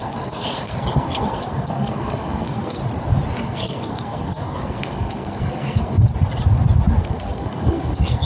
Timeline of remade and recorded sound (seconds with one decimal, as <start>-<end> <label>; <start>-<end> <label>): 0.0-2.8 remade; 2.8-3.4 recorded; 3.4-6.1 remade; 6.1-7.0 recorded; 7.0-8.3 remade